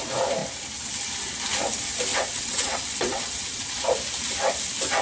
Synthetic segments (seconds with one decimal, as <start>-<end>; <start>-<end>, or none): 2.1-3.8